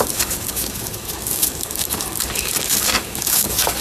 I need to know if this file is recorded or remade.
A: remade